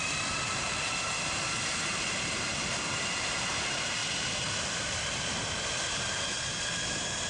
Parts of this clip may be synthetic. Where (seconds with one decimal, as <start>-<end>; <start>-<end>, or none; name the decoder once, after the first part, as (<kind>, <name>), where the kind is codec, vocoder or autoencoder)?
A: 0.0-4.0 (vocoder, BigVGAN v2); 4.6-7.3